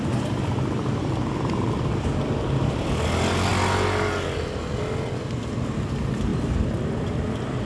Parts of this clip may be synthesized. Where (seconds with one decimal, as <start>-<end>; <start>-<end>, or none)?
none